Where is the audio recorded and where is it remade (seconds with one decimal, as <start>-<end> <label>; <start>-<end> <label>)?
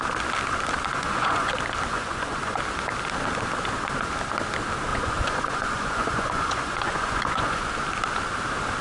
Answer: 0.0-0.9 recorded; 0.9-1.5 remade; 1.5-1.9 recorded; 1.9-2.6 remade; 2.6-4.9 recorded; 4.9-7.7 remade; 7.7-8.8 recorded